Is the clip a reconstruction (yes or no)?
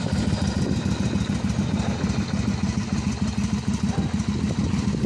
no